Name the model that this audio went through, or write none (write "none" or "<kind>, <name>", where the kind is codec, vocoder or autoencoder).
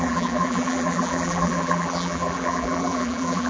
vocoder, BigVGAN v2